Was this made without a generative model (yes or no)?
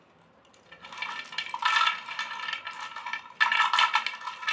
yes